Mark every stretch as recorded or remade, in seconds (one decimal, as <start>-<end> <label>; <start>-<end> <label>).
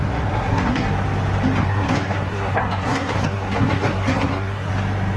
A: 0.0-0.9 remade; 0.9-1.6 recorded; 1.6-4.7 remade; 4.7-5.2 recorded